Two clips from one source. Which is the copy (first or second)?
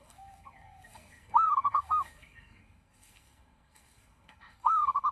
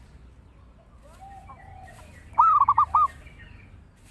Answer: first